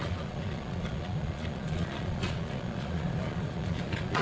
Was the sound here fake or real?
fake